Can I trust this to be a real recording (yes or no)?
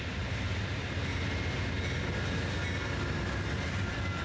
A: yes